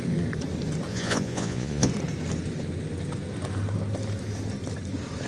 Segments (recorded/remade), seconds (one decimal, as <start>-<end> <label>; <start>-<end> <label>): 0.0-0.9 recorded; 0.9-1.9 remade; 1.9-5.3 recorded